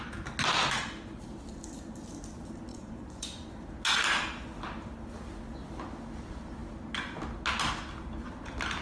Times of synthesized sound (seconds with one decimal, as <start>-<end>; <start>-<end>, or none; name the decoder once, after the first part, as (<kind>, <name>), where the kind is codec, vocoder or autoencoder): 2.7-3.5 (vocoder, Vocos)